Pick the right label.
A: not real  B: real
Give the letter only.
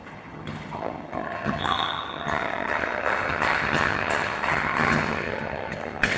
A